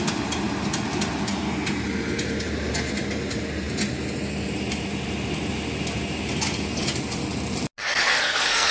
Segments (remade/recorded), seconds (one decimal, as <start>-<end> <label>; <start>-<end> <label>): 0.0-7.8 recorded; 7.8-8.7 remade